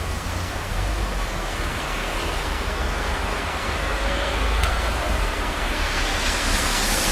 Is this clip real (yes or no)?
no